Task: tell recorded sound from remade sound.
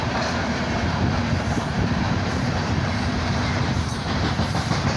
remade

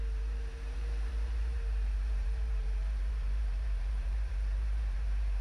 remade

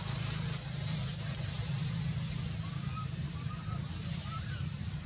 remade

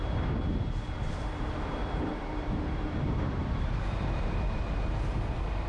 remade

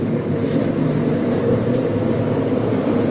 remade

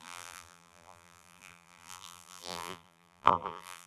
remade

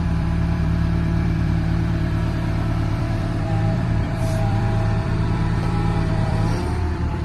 remade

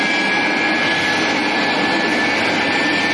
recorded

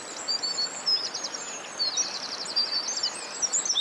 recorded